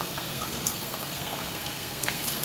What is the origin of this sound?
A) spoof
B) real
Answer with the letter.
A